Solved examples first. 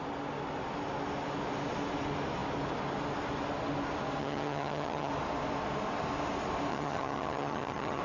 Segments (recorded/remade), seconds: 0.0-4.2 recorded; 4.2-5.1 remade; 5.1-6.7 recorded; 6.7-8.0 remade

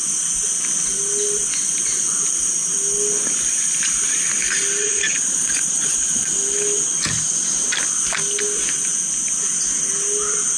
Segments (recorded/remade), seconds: 0.0-4.8 recorded; 4.8-6.3 remade; 6.3-10.6 recorded

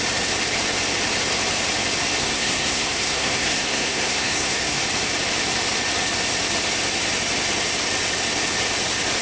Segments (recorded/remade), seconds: 0.0-2.2 recorded; 2.2-4.8 remade; 4.8-9.2 recorded

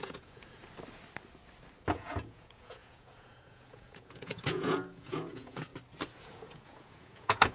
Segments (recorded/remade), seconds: 0.0-0.6 remade; 0.6-1.9 recorded; 1.9-5.7 remade; 5.7-6.2 recorded; 6.2-7.5 remade

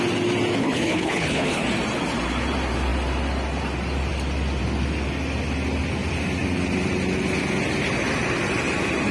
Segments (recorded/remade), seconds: 0.0-0.6 recorded; 0.6-1.6 remade; 1.6-9.1 recorded